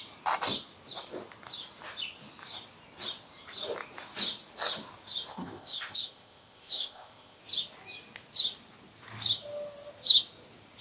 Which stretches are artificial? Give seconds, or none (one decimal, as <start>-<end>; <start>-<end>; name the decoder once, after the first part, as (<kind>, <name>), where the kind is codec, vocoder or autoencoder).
5.3-7.4 (codec, ZipCodec)